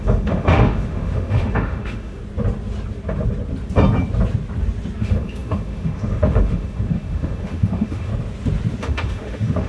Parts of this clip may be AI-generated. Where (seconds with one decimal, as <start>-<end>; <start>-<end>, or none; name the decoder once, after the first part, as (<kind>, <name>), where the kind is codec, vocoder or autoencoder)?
0.0-2.2 (autoencoder, DAC-VAE); 5.0-8.1; 8.8-9.7

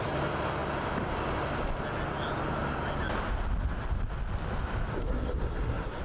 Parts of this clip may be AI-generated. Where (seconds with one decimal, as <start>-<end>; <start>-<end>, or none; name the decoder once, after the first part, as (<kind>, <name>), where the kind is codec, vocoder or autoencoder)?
5.0-6.0 (codec, SNAC)

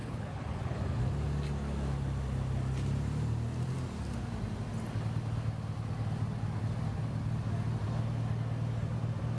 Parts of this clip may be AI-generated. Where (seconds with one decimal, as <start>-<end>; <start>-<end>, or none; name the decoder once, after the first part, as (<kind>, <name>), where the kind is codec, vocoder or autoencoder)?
0.0-0.8 (codec, HILCodec)

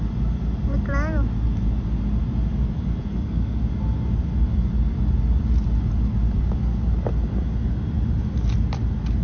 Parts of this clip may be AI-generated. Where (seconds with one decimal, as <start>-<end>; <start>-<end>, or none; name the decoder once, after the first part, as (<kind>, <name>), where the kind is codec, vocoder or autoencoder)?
3.1-3.6 (codec, SNAC)

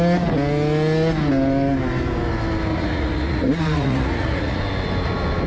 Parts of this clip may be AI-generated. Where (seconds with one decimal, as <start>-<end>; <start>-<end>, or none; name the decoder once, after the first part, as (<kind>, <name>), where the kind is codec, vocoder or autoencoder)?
2.7-4.6 (vocoder, Vocos)

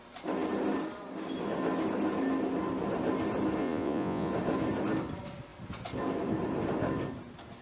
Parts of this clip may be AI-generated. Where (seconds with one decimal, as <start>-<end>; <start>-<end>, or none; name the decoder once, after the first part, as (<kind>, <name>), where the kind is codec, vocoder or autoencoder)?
3.6-4.3 (vocoder, Vocos)